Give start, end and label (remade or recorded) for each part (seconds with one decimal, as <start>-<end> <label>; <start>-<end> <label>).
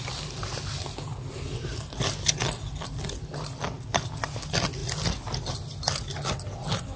0.0-7.0 recorded